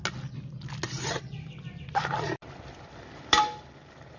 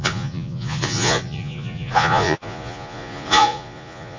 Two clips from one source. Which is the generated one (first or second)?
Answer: second